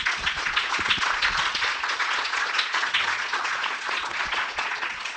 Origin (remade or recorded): remade